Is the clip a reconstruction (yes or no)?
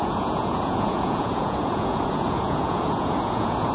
yes